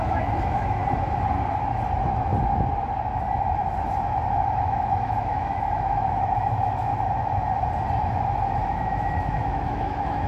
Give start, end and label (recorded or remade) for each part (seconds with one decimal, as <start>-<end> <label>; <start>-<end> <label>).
0.0-0.8 remade; 0.8-4.5 recorded; 4.5-6.9 remade; 6.9-8.5 recorded; 8.5-10.3 remade